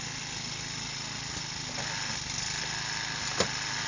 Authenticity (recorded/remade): recorded